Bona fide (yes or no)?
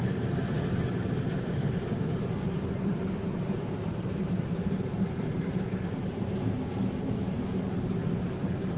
no